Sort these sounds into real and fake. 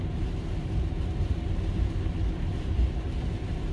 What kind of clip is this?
real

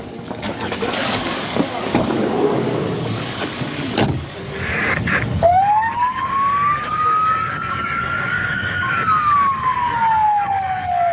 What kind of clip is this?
fake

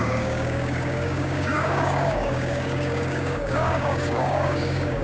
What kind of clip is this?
fake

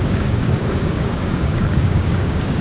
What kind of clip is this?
fake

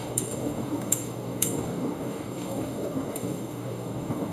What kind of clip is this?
fake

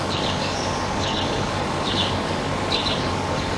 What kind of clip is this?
fake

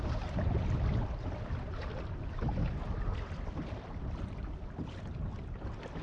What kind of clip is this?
real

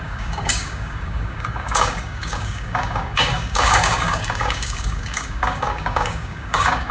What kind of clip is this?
fake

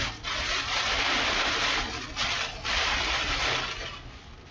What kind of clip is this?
real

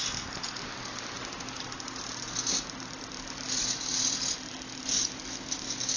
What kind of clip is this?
real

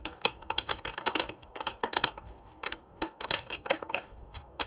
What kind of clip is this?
fake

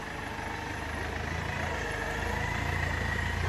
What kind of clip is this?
real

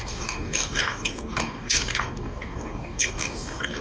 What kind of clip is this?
fake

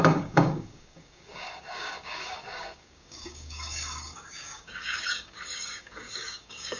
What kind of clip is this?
fake